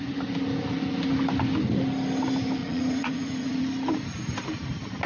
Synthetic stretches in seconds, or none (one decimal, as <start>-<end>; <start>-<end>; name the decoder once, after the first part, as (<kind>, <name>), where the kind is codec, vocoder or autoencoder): 2.6-3.7 (vocoder, Vocos)